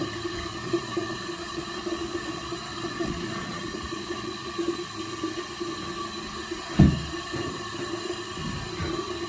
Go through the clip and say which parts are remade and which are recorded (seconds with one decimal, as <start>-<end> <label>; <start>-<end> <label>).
0.0-0.5 recorded; 0.5-4.8 remade; 4.8-9.3 recorded